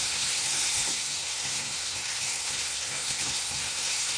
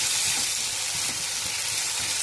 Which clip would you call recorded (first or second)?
second